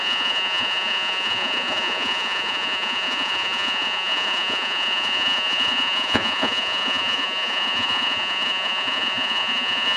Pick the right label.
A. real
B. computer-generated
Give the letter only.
B